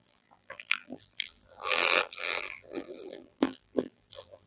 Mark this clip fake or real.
fake